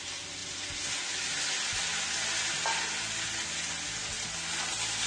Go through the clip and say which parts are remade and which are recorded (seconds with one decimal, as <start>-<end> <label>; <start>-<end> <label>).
0.0-5.1 recorded